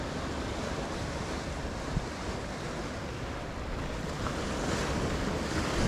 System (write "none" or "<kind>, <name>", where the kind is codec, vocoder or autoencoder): none